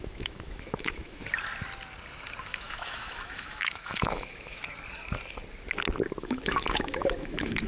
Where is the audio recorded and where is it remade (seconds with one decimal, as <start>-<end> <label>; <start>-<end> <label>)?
0.0-1.2 remade; 1.2-2.4 recorded; 2.4-4.6 remade; 4.6-6.2 recorded; 6.2-7.7 remade